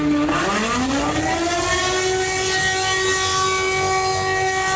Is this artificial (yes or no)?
no